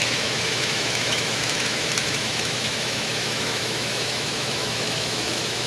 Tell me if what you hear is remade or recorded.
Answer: remade